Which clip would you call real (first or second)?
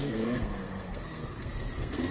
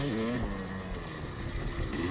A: second